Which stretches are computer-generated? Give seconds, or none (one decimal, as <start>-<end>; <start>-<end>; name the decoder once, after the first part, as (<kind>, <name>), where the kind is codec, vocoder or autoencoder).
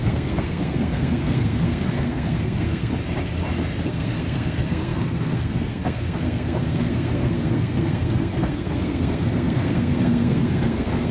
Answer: 0.0-2.9 (codec, SNAC); 3.8-11.1